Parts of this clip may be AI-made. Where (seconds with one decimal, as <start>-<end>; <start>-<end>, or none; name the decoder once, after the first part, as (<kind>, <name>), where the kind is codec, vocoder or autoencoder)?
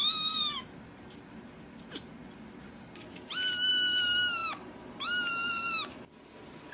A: none